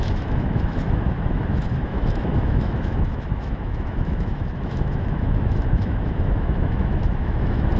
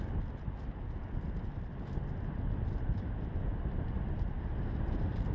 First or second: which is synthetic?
first